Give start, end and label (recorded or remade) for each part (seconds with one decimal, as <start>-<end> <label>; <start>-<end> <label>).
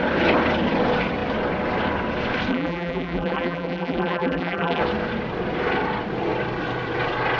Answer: 0.0-2.5 recorded; 2.5-4.8 remade; 4.8-7.4 recorded